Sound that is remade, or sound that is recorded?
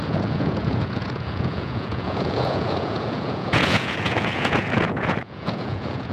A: remade